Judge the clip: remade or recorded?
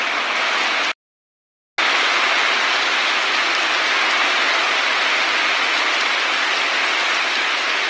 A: recorded